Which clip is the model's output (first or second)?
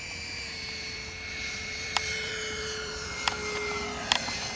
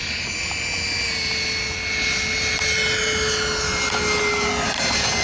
first